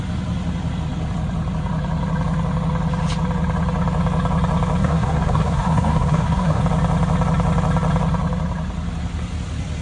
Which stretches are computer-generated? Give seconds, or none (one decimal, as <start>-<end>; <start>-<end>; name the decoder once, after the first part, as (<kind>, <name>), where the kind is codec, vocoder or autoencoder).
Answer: 4.8-6.6 (codec, SNAC)